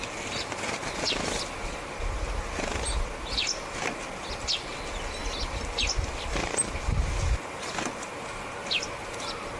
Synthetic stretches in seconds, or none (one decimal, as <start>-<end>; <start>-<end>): none